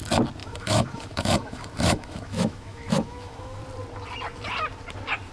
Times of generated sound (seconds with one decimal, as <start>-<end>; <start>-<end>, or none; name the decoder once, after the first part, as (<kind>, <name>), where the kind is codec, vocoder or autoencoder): 0.4-3.6 (autoencoder, DAC-VAE)